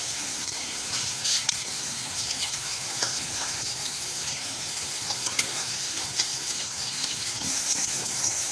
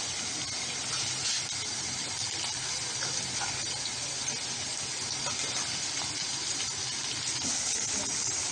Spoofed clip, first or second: first